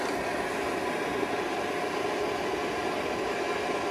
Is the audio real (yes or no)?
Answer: yes